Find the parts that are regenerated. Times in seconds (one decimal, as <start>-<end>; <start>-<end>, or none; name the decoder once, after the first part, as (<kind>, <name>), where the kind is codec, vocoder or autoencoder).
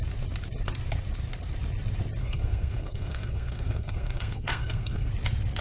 2.2-5.1 (codec, SNAC)